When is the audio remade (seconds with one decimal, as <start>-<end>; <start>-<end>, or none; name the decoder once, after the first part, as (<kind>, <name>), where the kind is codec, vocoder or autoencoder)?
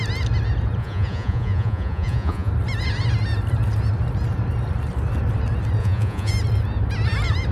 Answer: 0.8-2.5 (vocoder, Vocos); 5.8-6.3